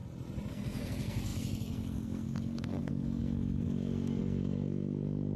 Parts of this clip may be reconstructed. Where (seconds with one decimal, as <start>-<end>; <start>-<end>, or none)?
0.5-5.4